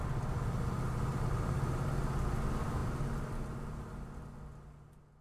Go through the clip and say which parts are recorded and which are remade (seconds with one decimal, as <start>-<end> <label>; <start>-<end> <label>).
0.0-1.1 recorded; 1.1-1.9 remade; 1.9-2.8 recorded; 2.8-4.4 remade; 4.4-5.2 recorded